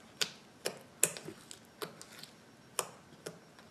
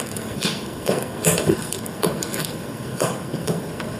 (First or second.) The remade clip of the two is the second